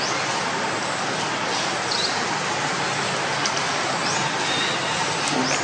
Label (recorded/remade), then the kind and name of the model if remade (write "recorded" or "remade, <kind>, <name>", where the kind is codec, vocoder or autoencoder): recorded